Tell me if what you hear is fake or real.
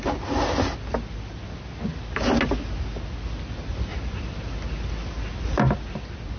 real